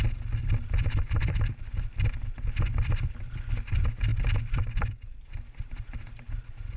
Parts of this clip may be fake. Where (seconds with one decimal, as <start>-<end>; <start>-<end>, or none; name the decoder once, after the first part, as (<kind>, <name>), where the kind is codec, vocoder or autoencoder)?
0.4-3.2 (vocoder, BigVGAN v2); 4.1-5.3